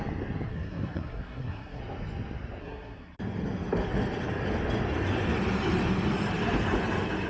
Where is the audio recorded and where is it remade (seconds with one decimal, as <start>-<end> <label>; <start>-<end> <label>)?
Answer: 0.0-0.5 recorded; 0.5-1.8 remade; 1.8-2.6 recorded; 2.6-3.2 remade; 3.2-7.3 recorded